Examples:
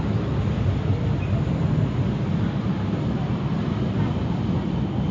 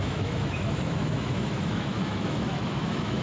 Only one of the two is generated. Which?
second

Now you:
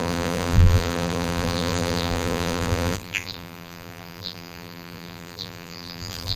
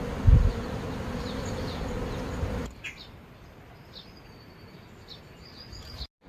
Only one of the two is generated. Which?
first